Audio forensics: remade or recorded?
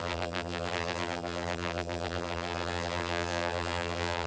remade